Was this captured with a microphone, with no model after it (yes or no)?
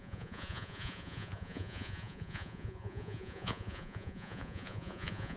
no